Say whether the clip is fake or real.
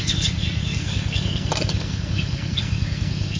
fake